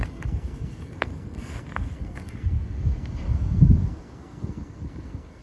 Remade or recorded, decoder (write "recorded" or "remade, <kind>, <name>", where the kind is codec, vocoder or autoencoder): remade, codec, SNAC